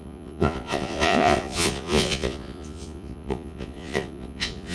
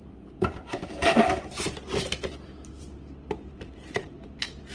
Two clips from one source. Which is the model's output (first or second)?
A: first